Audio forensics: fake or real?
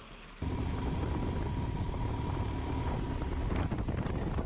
real